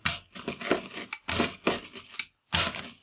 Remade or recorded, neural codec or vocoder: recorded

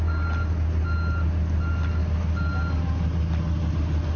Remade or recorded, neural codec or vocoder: recorded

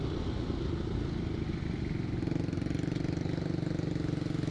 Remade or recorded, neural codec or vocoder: recorded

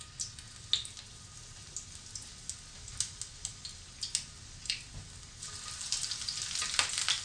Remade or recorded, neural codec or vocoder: recorded